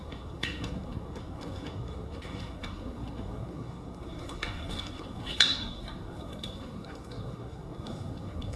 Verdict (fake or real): fake